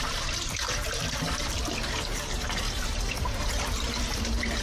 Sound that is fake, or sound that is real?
fake